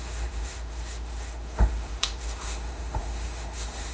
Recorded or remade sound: remade